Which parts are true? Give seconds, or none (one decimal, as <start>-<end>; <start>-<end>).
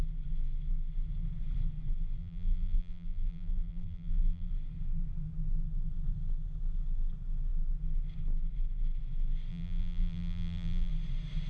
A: 0.0-2.2; 4.5-9.5; 10.9-11.5